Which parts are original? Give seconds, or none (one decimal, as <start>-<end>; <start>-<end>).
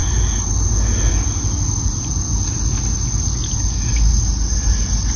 0.0-5.2